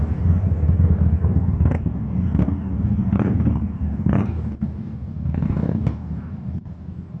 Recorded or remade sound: remade